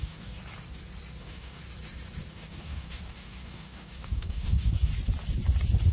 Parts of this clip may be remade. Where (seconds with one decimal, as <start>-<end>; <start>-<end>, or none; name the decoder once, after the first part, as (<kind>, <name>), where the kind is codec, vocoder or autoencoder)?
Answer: 0.0-0.4 (codec, DAC); 1.2-1.6; 2.3-4.9